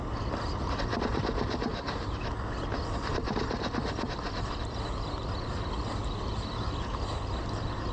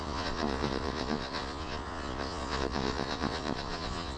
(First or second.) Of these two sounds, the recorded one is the first